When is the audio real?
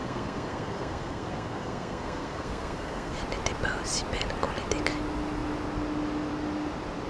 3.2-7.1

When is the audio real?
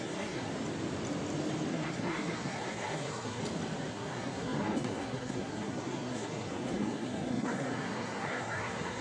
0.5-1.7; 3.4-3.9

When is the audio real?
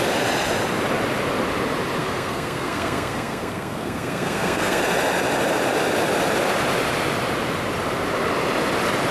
0.0-2.0; 4.8-9.1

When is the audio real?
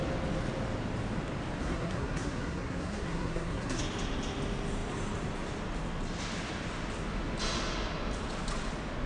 0.0-1.6; 3.8-9.1